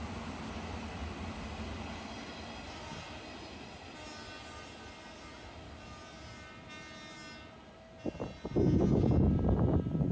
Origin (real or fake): real